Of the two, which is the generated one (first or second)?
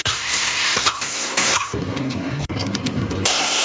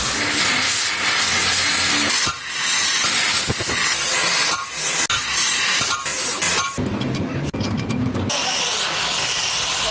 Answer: first